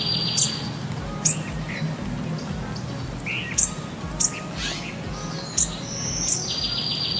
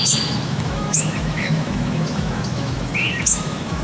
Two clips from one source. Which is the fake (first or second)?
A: second